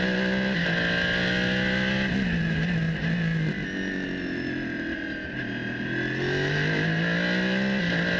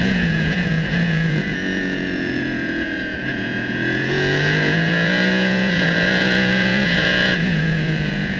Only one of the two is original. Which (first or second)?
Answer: first